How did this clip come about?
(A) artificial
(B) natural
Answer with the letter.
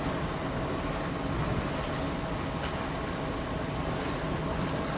B